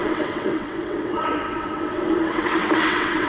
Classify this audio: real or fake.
fake